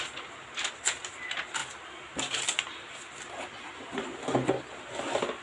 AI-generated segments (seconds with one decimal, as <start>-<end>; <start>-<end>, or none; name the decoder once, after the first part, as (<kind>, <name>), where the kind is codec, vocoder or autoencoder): none